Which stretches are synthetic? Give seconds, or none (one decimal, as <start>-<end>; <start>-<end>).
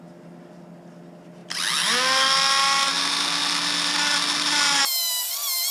none